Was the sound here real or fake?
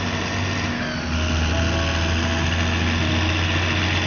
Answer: real